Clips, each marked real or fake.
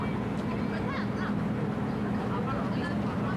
real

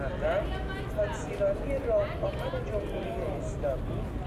real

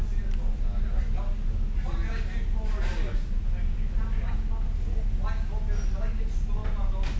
real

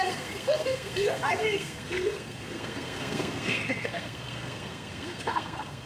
fake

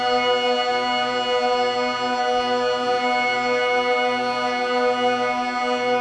real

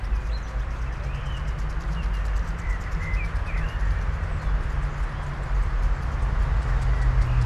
real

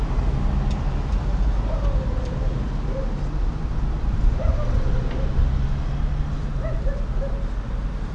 real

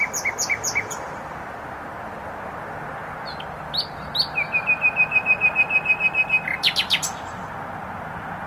real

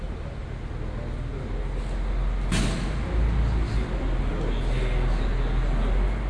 real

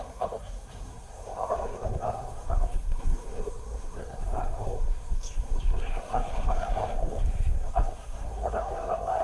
fake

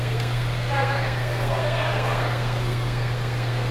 fake